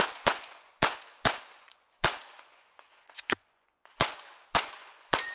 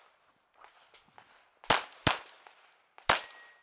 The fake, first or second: first